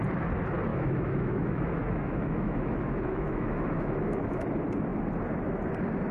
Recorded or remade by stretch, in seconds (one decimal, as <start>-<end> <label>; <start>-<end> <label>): 0.0-0.7 recorded; 0.7-4.4 remade; 4.4-6.1 recorded